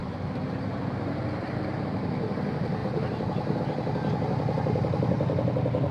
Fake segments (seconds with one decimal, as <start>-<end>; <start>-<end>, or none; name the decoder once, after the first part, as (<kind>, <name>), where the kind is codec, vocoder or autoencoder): 0.0-1.2 (vocoder, BigVGAN v2); 2.8-3.6